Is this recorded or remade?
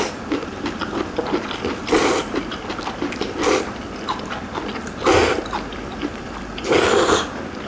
remade